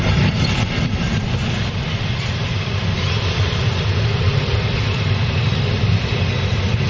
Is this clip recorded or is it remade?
recorded